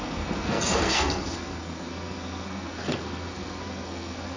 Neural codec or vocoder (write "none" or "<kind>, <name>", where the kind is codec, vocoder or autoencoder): codec, SNAC